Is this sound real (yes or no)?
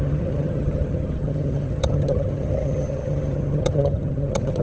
no